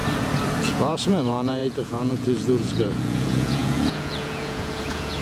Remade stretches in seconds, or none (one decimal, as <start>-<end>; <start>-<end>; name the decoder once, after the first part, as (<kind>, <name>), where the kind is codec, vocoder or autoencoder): 0.6-5.2 (vocoder, Vocos)